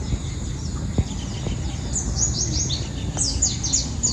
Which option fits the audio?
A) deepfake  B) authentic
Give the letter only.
B